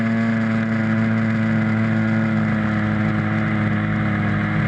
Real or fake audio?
real